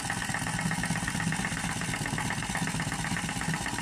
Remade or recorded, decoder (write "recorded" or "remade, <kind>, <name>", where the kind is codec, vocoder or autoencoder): recorded